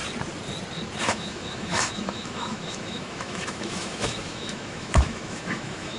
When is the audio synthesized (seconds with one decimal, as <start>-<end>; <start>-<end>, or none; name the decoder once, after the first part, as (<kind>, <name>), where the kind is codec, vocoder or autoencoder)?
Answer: 1.0-6.0 (autoencoder, DAC-VAE)

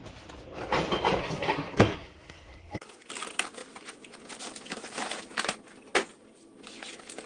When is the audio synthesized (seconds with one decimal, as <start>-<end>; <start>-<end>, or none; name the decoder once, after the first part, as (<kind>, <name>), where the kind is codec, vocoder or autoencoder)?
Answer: 1.2-3.1 (codec, SNAC)

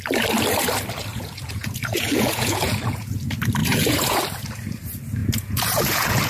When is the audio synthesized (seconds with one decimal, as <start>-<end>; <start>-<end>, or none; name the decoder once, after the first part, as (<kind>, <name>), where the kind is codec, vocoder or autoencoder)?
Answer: 1.1-3.2 (vocoder, Vocos); 3.6-4.2; 5.2-6.3

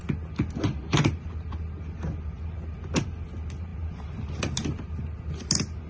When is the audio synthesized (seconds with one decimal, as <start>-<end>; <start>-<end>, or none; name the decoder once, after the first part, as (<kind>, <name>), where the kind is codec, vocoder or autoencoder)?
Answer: none

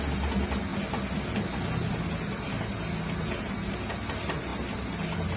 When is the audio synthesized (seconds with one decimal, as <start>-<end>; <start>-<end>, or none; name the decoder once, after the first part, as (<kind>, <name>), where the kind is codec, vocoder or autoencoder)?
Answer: none